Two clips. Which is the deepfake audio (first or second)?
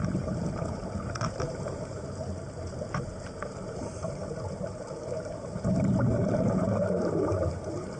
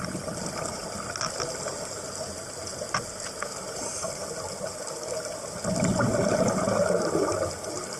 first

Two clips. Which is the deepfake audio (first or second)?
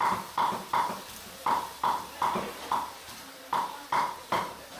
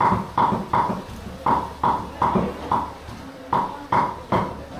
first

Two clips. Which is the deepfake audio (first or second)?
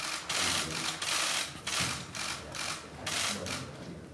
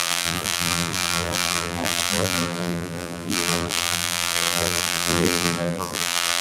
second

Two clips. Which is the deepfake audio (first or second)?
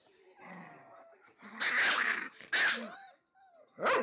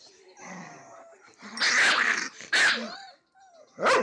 second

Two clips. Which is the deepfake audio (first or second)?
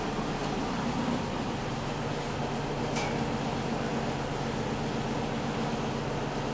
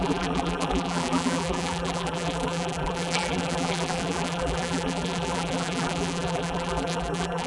second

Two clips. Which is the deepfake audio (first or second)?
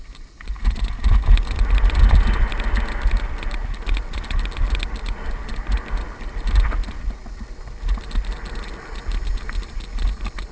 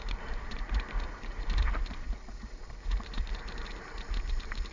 second